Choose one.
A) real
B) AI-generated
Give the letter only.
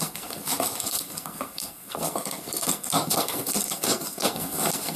B